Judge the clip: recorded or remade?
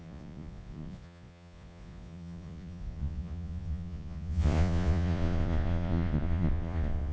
remade